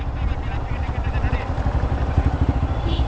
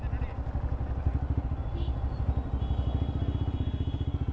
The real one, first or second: second